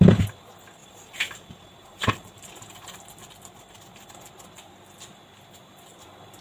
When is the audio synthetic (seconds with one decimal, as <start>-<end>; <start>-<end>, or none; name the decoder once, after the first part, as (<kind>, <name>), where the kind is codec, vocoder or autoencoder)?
0.8-2.4 (vocoder, BigVGAN v2)